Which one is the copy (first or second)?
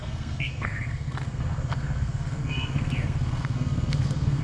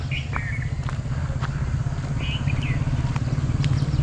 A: first